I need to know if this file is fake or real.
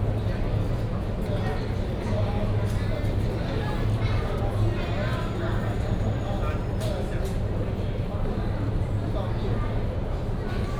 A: real